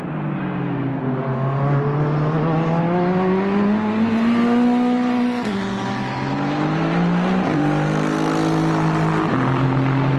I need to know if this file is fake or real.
real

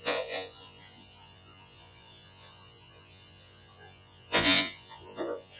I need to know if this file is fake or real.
fake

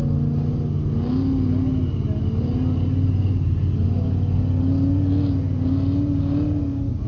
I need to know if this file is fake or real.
real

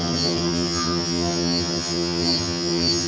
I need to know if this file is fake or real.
fake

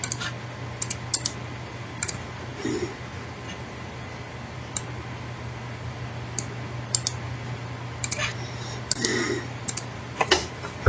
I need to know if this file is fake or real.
real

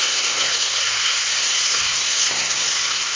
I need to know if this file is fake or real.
fake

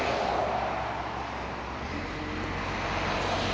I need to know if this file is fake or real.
real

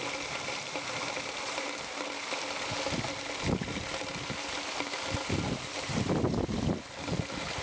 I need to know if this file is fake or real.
real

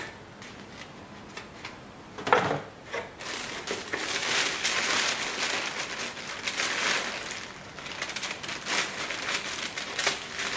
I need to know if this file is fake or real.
real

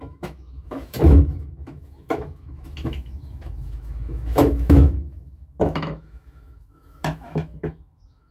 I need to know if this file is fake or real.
fake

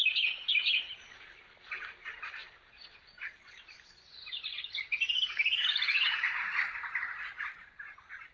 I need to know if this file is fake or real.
real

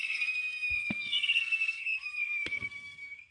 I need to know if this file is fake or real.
fake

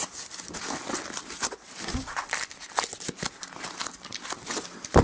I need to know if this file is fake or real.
real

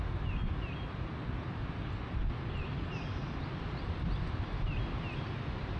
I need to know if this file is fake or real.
real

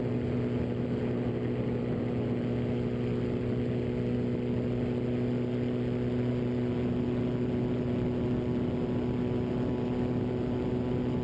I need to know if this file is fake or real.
real